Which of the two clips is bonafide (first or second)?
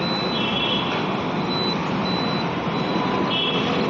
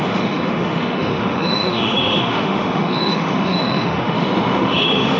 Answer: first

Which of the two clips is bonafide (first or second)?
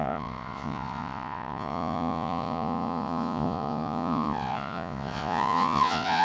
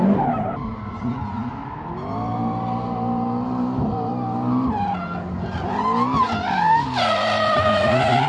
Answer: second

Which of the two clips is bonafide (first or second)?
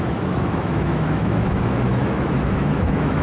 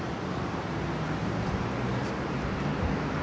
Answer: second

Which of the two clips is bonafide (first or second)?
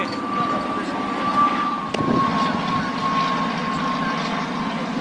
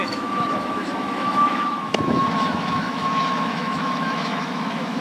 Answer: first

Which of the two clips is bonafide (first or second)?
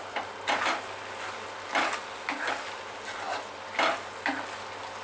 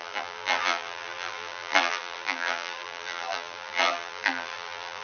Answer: first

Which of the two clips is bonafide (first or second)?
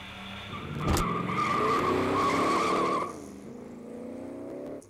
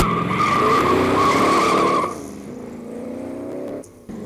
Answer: first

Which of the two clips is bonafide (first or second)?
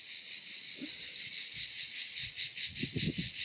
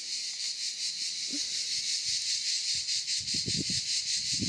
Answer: second